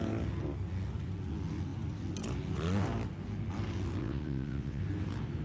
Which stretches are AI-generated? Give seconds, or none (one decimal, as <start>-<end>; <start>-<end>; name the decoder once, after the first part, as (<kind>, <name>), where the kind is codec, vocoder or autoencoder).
4.0-4.8 (vocoder, WaveNeXt)